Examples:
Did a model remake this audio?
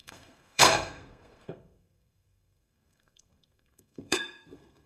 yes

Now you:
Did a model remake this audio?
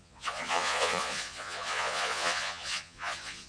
yes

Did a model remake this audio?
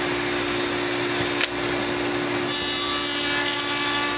no